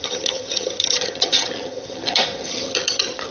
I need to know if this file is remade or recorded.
remade